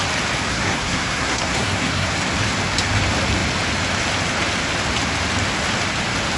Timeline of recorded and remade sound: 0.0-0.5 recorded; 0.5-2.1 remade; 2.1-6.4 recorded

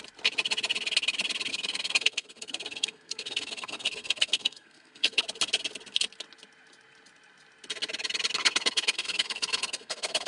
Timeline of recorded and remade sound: 0.0-1.5 recorded; 1.5-5.2 remade; 5.2-8.4 recorded; 8.4-10.3 remade

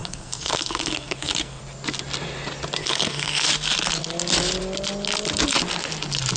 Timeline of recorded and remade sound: 0.0-1.6 remade; 1.6-2.8 recorded; 2.8-3.5 remade; 3.5-6.4 recorded

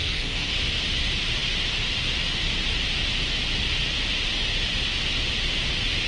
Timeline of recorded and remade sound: 0.0-0.6 remade; 0.6-6.1 recorded

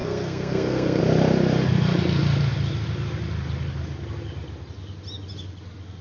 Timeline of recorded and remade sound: 0.0-1.0 remade; 1.0-6.0 recorded